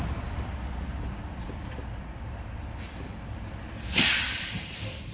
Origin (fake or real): real